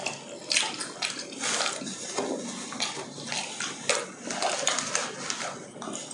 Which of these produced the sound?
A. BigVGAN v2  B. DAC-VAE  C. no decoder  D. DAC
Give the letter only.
C